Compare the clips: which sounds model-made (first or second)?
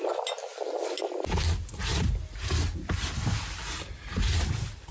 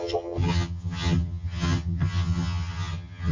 second